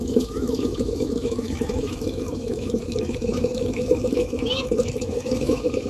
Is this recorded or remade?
remade